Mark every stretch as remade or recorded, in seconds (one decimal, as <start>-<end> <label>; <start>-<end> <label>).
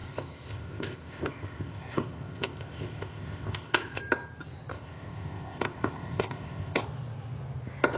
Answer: 0.0-4.0 remade; 4.0-4.7 recorded; 4.7-6.8 remade; 6.8-8.0 recorded